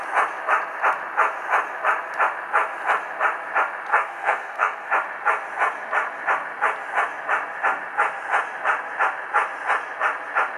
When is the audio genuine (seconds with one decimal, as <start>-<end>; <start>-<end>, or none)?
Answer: 0.0-3.9; 4.9-10.6